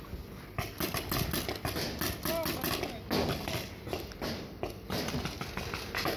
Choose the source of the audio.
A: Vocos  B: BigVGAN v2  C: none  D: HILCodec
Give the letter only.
C